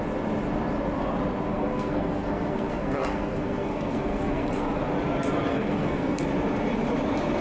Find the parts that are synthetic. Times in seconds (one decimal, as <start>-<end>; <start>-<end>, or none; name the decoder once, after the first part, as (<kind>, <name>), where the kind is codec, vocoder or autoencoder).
1.5-4.8 (codec, SNAC); 5.5-6.2